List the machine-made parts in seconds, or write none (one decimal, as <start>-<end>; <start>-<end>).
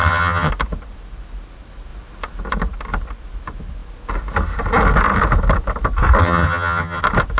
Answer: 0.0-0.5; 6.2-7.0